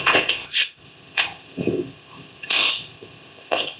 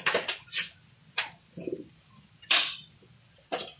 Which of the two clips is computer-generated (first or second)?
first